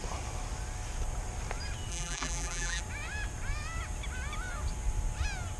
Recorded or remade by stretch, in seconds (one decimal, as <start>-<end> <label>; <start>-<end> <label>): 0.0-1.9 recorded; 1.9-2.8 remade; 2.8-5.6 recorded